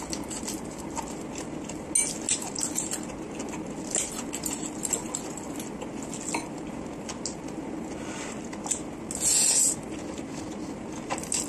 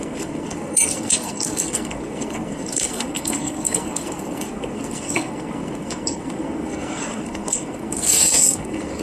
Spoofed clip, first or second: second